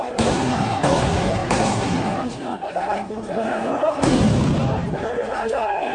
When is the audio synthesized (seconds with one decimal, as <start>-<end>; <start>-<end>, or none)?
0.0-4.3; 4.9-5.9